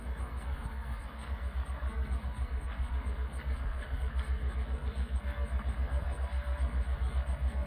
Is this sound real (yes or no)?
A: no